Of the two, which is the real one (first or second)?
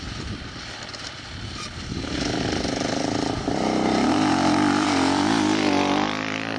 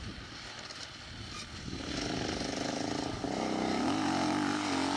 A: second